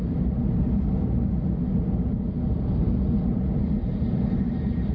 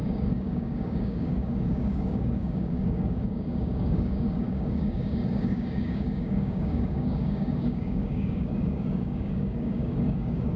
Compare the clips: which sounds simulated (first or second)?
second